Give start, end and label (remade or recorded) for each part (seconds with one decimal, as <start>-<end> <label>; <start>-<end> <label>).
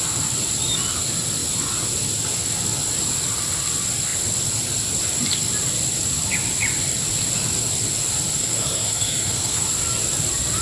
0.0-8.4 recorded; 8.4-9.7 remade; 9.7-10.6 recorded